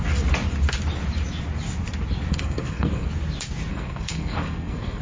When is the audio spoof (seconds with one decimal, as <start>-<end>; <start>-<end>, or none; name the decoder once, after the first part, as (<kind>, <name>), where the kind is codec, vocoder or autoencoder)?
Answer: 2.3-3.1 (codec, SNAC); 3.7-5.0